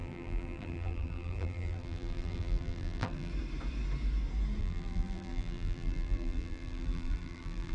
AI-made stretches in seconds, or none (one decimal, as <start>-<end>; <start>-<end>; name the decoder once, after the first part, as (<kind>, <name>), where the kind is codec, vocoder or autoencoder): 0.0-3.3 (vocoder, BigVGAN v2); 4.6-7.7